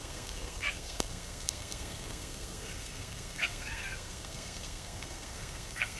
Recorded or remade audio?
remade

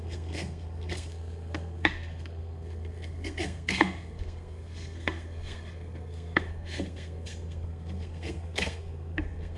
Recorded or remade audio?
remade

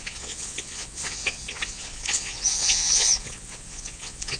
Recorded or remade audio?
remade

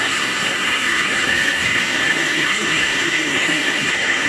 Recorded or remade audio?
remade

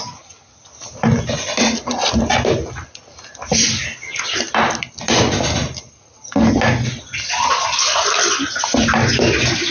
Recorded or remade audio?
recorded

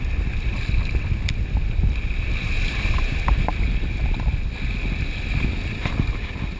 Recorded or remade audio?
recorded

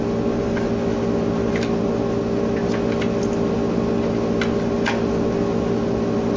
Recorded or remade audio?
recorded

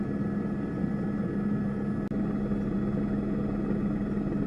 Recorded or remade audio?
recorded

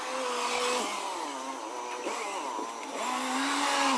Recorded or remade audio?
recorded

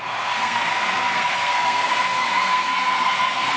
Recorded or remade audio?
remade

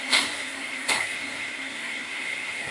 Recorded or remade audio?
remade